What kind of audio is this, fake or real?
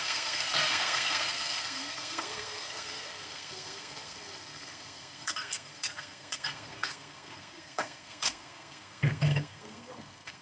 fake